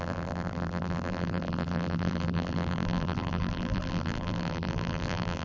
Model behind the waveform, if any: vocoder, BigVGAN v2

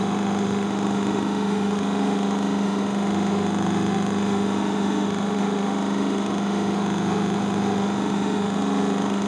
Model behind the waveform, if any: autoencoder, DAC-VAE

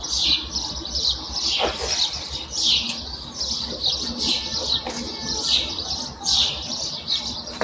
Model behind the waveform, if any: none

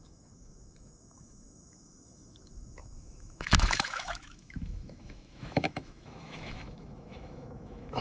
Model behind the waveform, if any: autoencoder, DAC-VAE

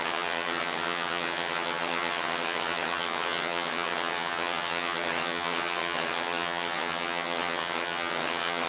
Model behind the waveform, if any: vocoder, HiFi-GAN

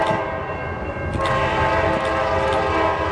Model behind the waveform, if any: none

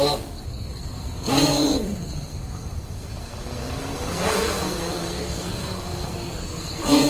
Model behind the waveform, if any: codec, SNAC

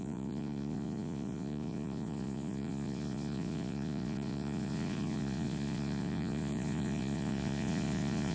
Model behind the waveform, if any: vocoder, Vocos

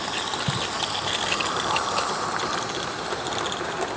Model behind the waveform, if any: none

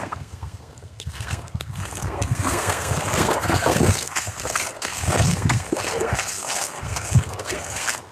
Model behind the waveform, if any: codec, SNAC